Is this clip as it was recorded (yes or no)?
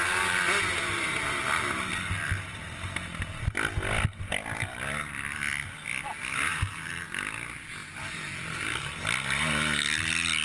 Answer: yes